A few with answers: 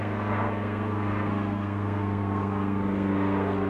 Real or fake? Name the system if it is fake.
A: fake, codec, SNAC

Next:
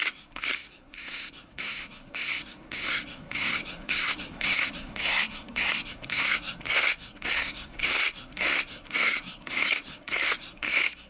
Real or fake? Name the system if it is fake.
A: fake, codec, SNAC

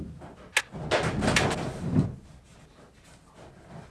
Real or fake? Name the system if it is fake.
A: real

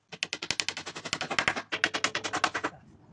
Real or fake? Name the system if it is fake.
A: real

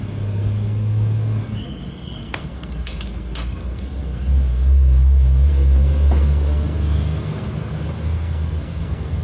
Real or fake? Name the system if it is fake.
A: fake, codec, SNAC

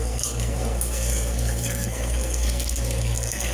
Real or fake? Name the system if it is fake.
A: fake, codec, SNAC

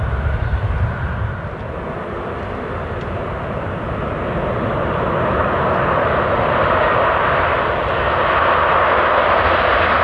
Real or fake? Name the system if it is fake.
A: real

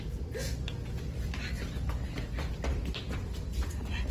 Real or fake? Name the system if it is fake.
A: real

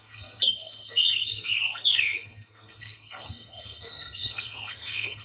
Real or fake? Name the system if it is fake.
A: fake, codec, SNAC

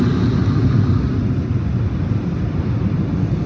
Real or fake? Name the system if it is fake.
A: real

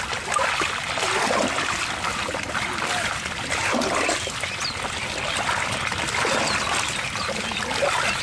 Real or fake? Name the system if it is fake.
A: real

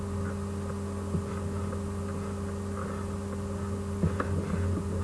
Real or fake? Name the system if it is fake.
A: real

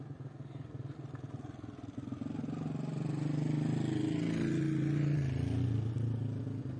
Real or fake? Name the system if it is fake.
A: real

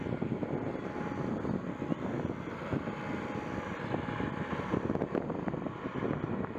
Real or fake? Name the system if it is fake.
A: real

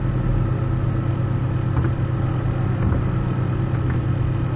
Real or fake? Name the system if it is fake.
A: real